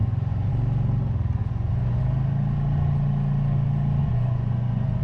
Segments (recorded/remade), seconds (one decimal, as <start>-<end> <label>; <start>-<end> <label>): 0.0-0.5 remade; 0.5-1.4 recorded; 1.4-2.0 remade; 2.0-4.0 recorded; 4.0-5.0 remade